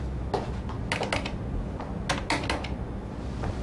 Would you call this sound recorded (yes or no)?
yes